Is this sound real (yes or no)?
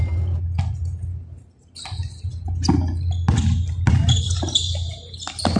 yes